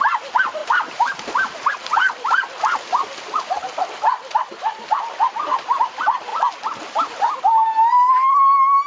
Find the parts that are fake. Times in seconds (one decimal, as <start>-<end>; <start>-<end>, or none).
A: 0.6-1.8